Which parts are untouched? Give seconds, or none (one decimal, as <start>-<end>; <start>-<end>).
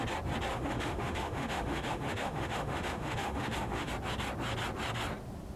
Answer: 0.0-0.5; 3.9-5.6